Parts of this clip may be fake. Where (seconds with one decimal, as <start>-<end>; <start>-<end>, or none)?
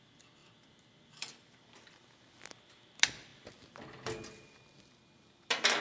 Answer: none